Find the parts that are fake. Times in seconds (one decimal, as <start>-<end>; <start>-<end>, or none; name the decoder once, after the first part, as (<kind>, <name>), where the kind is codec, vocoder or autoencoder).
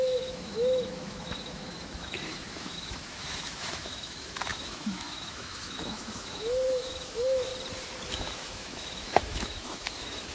0.0-7.5 (autoencoder, DAC-VAE); 8.1-10.3